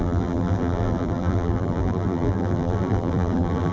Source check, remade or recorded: remade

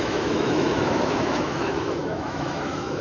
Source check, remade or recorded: remade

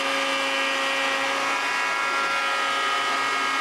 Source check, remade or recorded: recorded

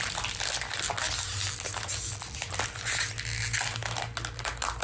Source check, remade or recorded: recorded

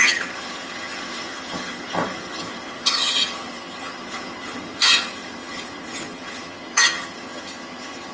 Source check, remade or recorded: remade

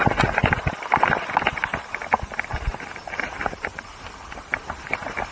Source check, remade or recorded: recorded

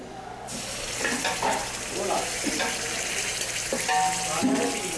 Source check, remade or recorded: recorded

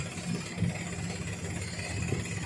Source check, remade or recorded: recorded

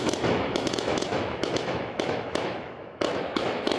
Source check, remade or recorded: remade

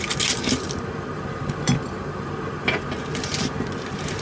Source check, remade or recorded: remade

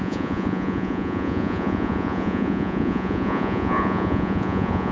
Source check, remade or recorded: remade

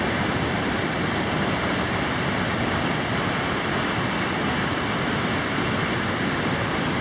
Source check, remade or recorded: recorded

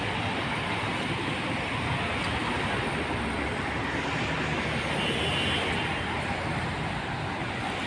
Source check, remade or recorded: recorded